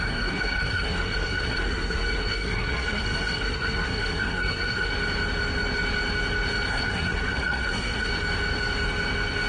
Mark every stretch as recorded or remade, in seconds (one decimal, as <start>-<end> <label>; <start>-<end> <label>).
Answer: 0.0-4.9 remade; 4.9-6.7 recorded; 6.7-8.1 remade; 8.1-9.5 recorded

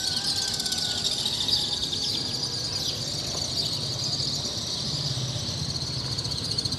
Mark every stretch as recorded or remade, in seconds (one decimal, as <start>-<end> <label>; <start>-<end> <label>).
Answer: 0.0-6.8 recorded

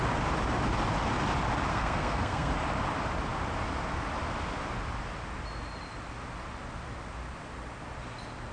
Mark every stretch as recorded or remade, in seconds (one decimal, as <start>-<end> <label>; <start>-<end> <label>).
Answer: 0.0-1.7 recorded; 1.7-2.5 remade; 2.5-8.5 recorded

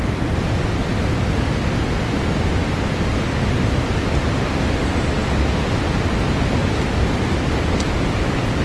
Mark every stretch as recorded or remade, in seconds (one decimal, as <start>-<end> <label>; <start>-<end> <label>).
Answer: 0.0-8.6 recorded